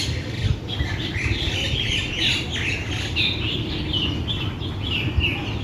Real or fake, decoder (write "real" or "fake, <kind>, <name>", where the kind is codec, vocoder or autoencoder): real